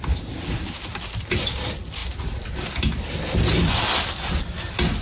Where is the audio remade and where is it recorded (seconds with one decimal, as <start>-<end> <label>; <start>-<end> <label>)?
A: 0.0-5.0 recorded